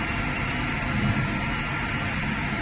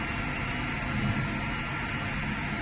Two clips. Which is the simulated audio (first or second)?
first